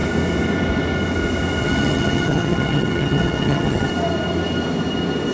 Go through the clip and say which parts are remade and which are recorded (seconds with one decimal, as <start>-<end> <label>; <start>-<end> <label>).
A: 0.0-1.6 recorded; 1.6-3.9 remade; 3.9-5.3 recorded